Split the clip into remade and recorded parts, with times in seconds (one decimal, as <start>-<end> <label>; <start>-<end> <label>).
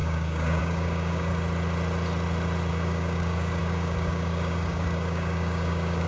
0.0-1.3 remade; 1.3-2.7 recorded; 2.7-6.1 remade